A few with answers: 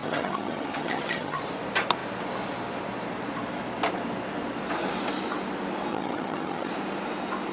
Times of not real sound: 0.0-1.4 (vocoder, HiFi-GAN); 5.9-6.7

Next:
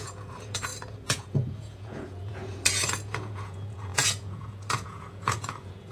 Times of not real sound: 0.0-5.9 (vocoder, Vocos)

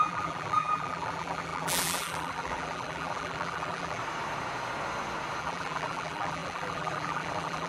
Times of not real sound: 0.0-4.0 (vocoder, BigVGAN v2); 5.4-7.7

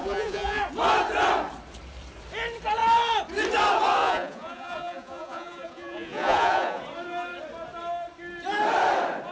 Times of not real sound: 0.0-0.6 (vocoder, Vocos); 4.0-6.8

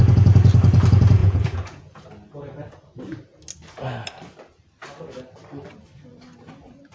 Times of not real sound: 1.2-2.0 (vocoder, Vocos)

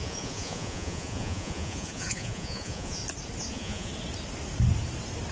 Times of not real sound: 0.0-3.0 (vocoder, Vocos); 3.5-3.9

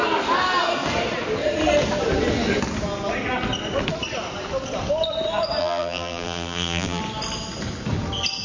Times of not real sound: 5.6-7.0 (vocoder, BigVGAN v2)

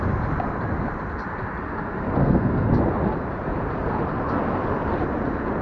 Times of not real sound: 2.2-2.7 (codec, SNAC)